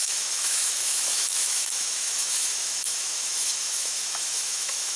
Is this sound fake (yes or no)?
yes